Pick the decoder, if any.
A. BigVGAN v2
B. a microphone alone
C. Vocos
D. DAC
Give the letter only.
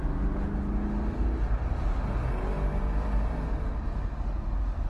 B